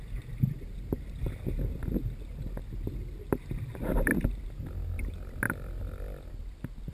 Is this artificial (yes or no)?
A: no